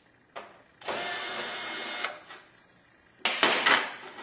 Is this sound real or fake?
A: real